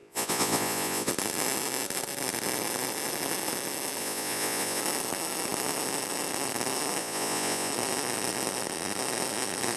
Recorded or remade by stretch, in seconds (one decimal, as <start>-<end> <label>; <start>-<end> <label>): 0.0-1.1 remade; 1.1-4.0 recorded; 4.0-4.8 remade; 4.8-7.0 recorded; 7.0-7.7 remade; 7.7-9.8 recorded